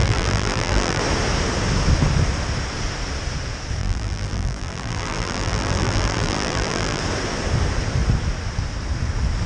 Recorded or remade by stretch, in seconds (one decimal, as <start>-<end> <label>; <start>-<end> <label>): 0.0-1.0 remade; 1.0-3.8 recorded; 3.8-7.0 remade; 7.0-9.5 recorded